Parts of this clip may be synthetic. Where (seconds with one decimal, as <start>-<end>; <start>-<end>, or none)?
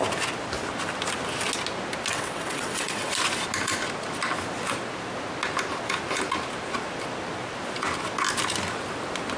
2.1-3.1